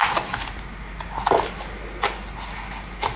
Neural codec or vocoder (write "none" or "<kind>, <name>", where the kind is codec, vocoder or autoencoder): none